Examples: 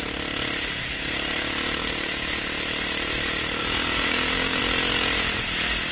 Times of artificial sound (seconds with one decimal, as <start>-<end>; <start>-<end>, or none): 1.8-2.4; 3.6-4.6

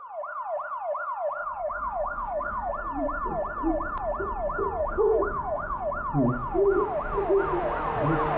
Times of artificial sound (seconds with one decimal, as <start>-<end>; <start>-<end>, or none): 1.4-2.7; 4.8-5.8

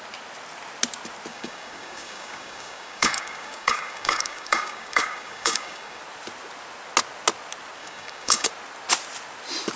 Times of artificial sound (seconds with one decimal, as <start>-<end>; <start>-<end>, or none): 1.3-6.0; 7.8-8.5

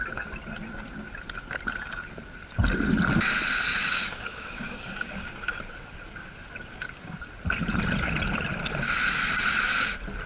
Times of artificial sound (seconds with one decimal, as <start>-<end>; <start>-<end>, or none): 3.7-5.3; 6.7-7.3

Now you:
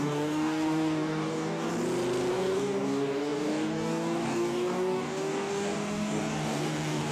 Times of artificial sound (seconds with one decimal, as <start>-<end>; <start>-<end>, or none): 0.0-1.7; 2.3-7.1

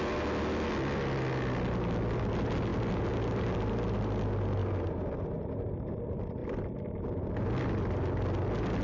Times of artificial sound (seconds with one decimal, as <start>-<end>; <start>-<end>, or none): none